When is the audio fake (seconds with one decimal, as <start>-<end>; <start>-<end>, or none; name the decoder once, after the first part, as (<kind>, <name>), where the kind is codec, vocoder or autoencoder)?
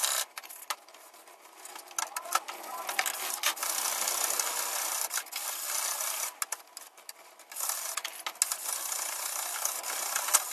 none